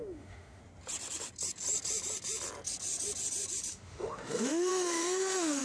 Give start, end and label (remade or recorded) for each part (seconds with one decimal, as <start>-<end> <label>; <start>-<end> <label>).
0.0-0.6 remade; 0.6-3.7 recorded; 3.7-5.6 remade